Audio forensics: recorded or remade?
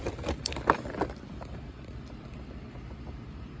remade